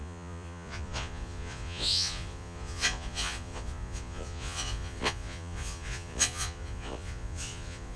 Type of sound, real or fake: fake